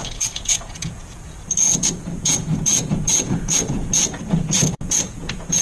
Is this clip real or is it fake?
fake